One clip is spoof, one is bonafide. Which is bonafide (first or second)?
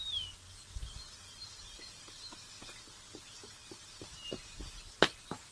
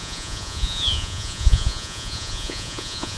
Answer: first